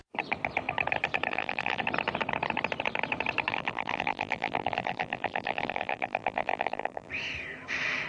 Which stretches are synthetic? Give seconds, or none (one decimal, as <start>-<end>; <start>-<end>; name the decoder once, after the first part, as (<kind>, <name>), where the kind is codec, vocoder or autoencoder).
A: 1.3-1.8 (vocoder, BigVGAN v2); 3.5-7.1